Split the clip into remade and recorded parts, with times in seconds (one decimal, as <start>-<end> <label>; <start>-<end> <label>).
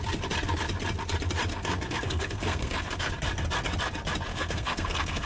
0.0-1.5 recorded; 1.5-3.1 remade; 3.1-4.3 recorded; 4.3-5.3 remade